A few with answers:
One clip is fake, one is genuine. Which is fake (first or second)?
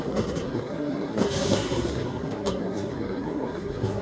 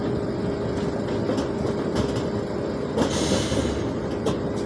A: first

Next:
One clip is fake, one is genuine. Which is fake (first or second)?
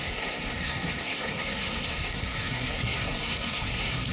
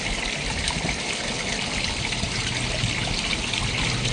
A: first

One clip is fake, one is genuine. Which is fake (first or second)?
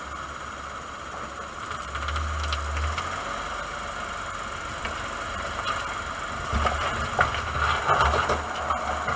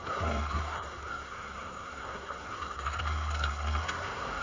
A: second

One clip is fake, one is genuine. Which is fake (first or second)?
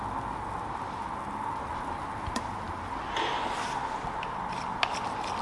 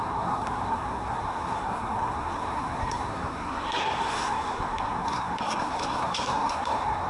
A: second